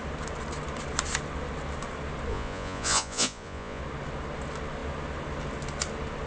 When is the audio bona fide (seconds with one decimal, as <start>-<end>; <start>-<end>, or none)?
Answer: 0.0-2.3; 3.8-6.3

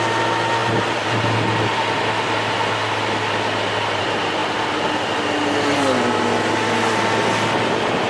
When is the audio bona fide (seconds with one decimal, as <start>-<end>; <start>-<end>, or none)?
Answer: 0.0-8.1

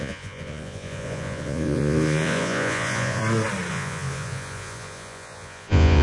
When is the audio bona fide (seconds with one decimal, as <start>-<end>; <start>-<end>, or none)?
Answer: 3.2-3.7

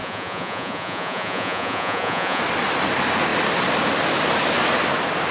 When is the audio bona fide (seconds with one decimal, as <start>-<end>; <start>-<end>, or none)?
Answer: 2.4-5.3

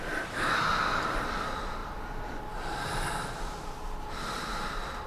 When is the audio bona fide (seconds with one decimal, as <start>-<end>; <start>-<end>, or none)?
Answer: 0.0-5.1